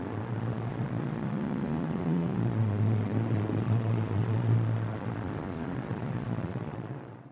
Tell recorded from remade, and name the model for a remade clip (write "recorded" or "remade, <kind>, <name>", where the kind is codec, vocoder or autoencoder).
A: remade, vocoder, Vocos